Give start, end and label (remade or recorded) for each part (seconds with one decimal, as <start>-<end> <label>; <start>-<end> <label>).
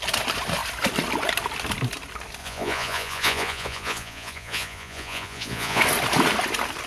0.0-2.4 recorded; 2.4-5.8 remade; 5.8-6.9 recorded